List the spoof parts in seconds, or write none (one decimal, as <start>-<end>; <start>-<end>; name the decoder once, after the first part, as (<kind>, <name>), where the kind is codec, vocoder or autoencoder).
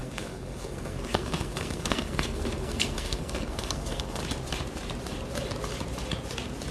0.0-4.2 (codec, SNAC)